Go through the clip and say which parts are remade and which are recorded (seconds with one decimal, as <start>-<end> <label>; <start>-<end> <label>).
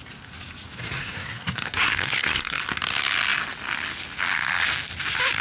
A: 0.0-1.0 recorded; 1.0-2.6 remade; 2.6-5.4 recorded